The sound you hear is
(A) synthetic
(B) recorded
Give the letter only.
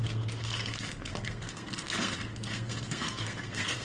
A